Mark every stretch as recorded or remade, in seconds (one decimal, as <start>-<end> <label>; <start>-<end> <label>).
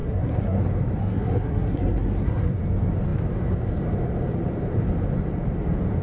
0.0-0.6 remade; 0.6-1.0 recorded; 1.0-2.6 remade; 2.6-6.0 recorded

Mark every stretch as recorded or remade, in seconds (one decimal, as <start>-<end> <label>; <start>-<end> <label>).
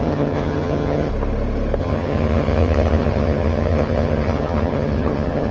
0.0-1.1 remade; 1.1-1.8 recorded; 1.8-5.5 remade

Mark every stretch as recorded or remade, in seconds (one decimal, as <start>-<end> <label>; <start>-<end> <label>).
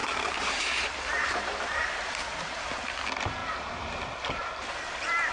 0.0-2.7 remade; 2.7-5.3 recorded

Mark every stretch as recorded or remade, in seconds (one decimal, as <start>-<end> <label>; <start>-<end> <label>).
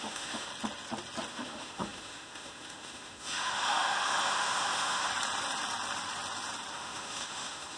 0.0-0.5 remade; 0.5-1.3 recorded; 1.3-5.1 remade; 5.1-6.7 recorded; 6.7-7.8 remade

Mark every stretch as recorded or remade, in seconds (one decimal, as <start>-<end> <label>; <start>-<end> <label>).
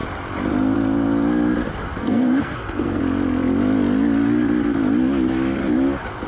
0.0-1.9 recorded; 1.9-3.0 remade; 3.0-6.3 recorded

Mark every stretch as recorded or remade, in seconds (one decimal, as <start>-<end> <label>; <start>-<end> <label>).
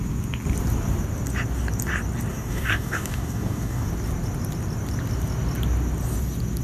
0.0-2.3 recorded; 2.3-3.9 remade; 3.9-6.6 recorded